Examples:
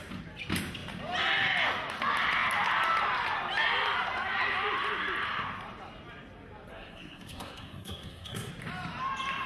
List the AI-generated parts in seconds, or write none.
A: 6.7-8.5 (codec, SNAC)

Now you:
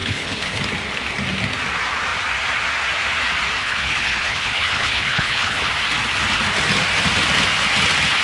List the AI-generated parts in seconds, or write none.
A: 0.0-0.6 (codec, HILCodec); 3.6-5.7